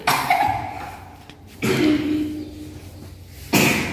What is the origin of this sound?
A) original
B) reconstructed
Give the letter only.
A